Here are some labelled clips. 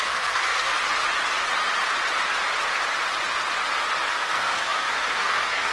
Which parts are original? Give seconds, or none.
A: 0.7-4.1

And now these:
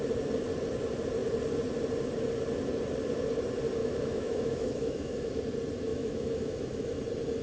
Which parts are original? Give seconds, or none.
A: 0.0-3.8; 5.4-5.9; 7.0-7.4

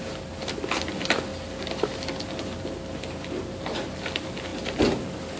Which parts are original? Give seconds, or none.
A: 0.0-5.4

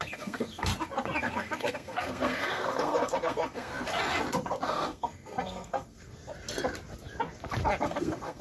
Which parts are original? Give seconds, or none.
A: 0.7-1.2; 3.7-4.7; 6.2-7.8

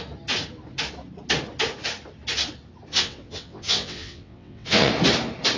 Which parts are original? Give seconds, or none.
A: 0.0-2.9; 4.9-5.6

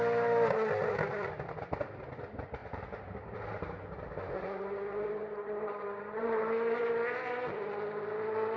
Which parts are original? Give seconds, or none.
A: 0.0-2.6; 4.3-5.2; 6.9-8.6

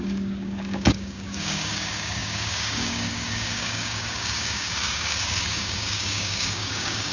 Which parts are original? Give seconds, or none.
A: none

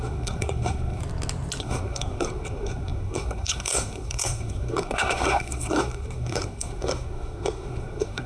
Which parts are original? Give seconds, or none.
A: 1.0-1.6